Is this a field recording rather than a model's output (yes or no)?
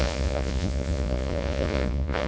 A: no